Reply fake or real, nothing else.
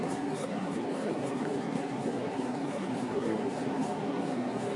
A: fake